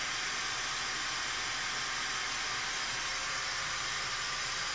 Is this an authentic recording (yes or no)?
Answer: no